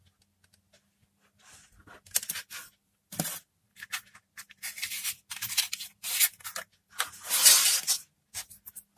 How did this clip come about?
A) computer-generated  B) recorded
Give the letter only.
B